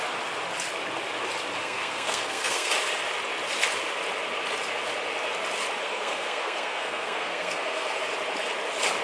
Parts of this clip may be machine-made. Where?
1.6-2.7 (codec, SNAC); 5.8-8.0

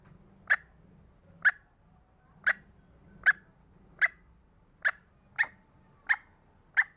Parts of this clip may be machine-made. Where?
none

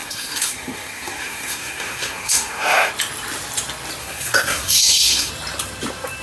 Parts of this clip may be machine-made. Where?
0.0-2.9 (codec, SNAC); 4.0-5.3

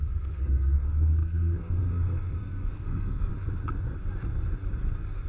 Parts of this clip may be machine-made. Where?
0.0-3.3 (codec, SNAC)

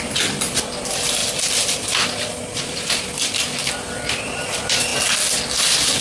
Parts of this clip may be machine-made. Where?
none